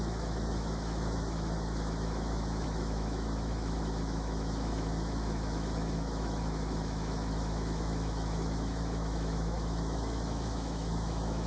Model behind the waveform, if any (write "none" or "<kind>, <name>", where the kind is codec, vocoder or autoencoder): autoencoder, DAC-VAE